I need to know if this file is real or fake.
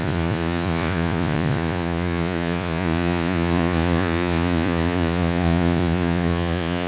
fake